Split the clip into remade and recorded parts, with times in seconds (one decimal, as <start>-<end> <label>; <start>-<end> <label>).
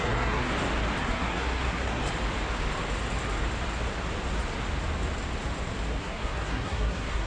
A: 0.0-0.5 remade; 0.5-1.0 recorded; 1.0-2.0 remade; 2.0-6.0 recorded; 6.0-7.3 remade